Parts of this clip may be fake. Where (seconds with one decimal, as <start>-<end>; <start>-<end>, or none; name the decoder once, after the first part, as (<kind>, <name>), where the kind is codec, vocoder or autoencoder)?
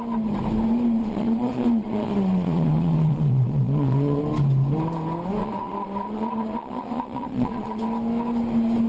1.0-4.2 (vocoder, Vocos); 5.4-7.8